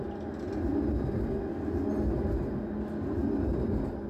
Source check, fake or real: real